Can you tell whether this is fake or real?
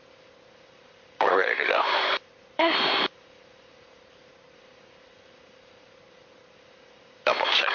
fake